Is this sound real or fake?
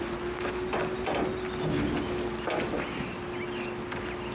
real